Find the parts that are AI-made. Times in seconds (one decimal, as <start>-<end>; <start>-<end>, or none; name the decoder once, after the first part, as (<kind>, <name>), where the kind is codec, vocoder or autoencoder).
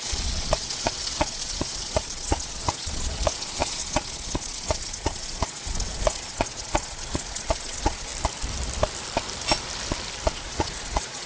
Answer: 0.0-8.1 (vocoder, Vocos); 10.3-11.3